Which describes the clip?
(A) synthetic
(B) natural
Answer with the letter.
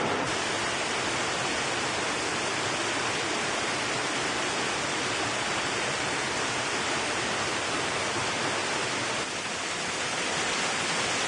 B